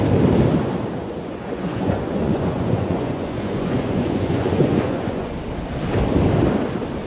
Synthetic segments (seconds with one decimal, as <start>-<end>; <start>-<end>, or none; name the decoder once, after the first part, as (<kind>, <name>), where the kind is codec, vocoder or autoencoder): 1.0-5.3 (vocoder, Vocos)